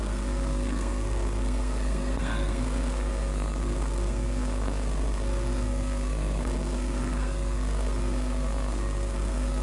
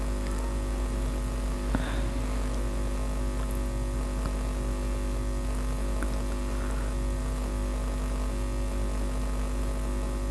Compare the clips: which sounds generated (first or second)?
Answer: first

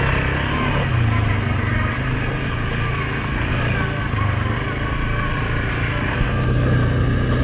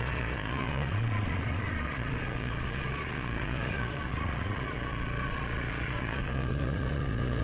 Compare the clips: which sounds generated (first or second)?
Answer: second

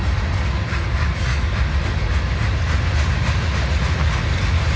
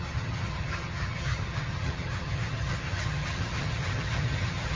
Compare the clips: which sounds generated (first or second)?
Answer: second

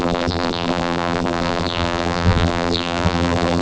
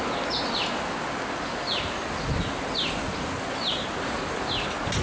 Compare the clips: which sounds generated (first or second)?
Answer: first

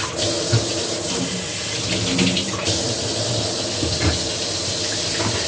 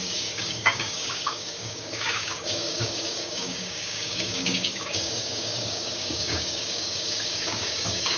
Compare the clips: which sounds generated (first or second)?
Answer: second